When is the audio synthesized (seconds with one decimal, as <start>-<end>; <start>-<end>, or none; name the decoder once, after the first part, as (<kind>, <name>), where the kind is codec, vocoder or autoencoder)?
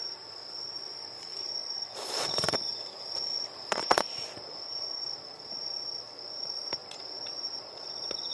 0.0-8.3 (vocoder, Vocos)